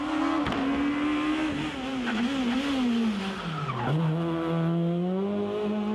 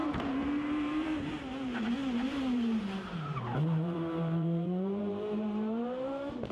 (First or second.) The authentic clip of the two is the first